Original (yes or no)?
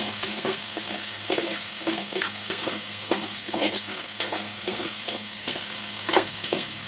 no